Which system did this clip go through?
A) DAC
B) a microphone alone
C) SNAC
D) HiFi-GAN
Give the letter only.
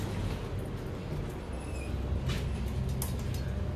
B